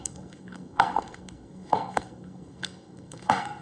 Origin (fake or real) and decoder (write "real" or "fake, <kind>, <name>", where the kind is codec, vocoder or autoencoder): fake, codec, SNAC